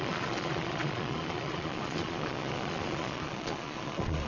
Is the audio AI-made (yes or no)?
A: yes